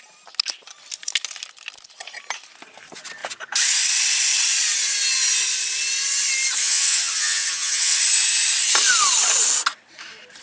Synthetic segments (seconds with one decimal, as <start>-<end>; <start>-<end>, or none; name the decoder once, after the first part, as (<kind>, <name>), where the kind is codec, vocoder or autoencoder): 6.6-8.0 (vocoder, HiFi-GAN)